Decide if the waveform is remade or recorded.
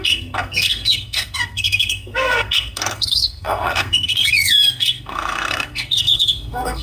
remade